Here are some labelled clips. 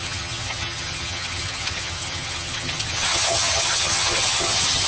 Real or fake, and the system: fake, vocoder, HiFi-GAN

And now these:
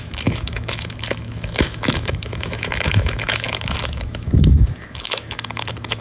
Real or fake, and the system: fake, autoencoder, DAC-VAE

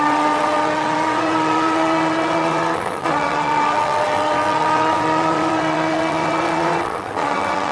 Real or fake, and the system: fake, vocoder, WaveNeXt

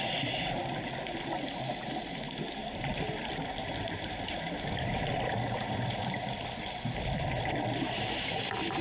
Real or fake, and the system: real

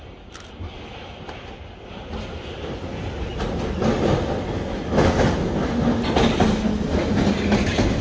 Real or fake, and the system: real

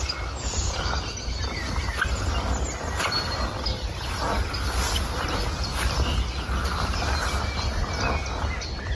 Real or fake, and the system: real